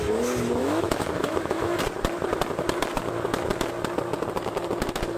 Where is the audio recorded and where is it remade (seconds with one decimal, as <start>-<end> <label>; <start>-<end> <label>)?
0.0-0.6 recorded; 0.6-1.8 remade; 1.8-5.2 recorded